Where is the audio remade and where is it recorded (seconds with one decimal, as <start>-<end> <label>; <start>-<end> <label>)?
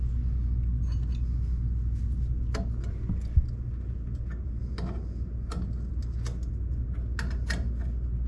0.0-8.3 recorded